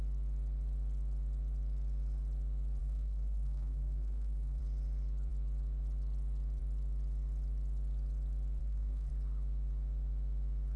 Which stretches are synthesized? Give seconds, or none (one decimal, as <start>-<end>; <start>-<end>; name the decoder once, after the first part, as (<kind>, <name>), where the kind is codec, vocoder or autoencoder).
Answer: 2.8-4.6 (codec, SNAC); 8.6-9.1